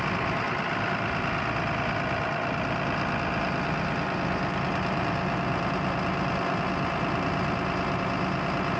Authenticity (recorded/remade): recorded